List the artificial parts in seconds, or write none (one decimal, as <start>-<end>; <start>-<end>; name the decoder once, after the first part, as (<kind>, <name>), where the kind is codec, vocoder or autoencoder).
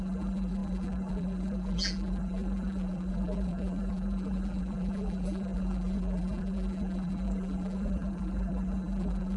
0.0-9.4 (vocoder, BigVGAN v2)